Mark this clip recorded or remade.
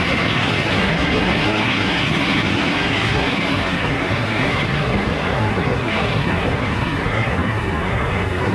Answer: remade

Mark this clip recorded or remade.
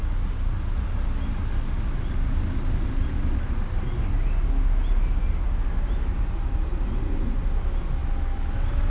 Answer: recorded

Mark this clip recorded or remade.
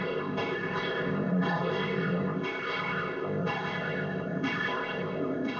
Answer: remade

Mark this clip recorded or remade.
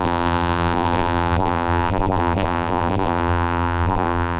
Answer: remade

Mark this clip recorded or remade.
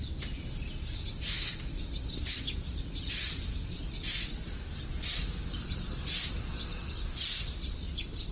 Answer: recorded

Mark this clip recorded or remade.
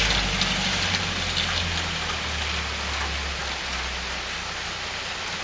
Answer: recorded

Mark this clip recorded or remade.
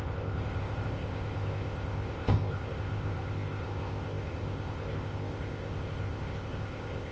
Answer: remade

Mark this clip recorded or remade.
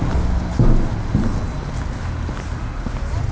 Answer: recorded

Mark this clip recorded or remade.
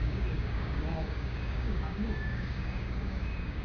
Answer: remade